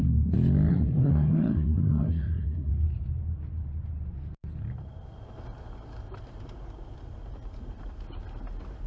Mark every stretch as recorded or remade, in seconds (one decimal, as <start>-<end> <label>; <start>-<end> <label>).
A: 0.0-0.7 recorded; 0.7-2.7 remade; 2.7-8.9 recorded